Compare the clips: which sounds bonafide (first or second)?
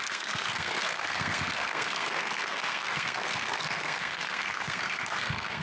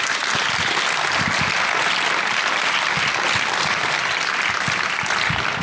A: second